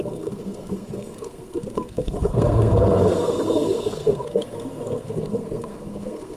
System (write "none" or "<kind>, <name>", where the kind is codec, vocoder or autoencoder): codec, SNAC